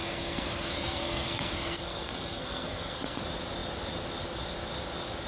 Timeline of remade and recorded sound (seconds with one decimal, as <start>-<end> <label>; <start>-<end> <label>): 0.0-3.2 remade; 3.2-5.3 recorded